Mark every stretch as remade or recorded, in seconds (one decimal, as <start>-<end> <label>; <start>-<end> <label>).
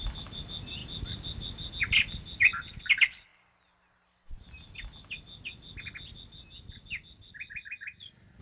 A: 0.0-8.4 recorded